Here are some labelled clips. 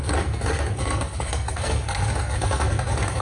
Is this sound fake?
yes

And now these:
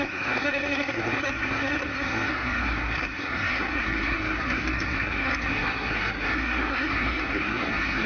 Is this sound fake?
yes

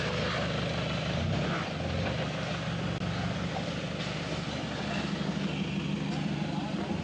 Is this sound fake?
no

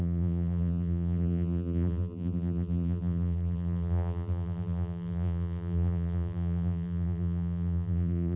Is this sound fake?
yes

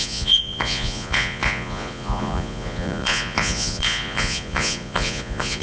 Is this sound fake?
yes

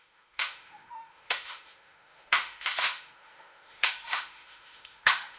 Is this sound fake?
yes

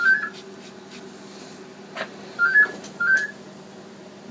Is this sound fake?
no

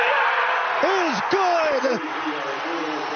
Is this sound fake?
no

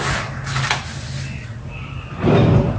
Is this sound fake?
no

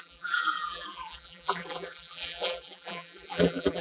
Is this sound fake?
yes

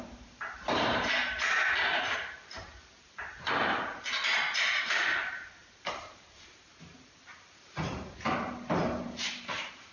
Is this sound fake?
yes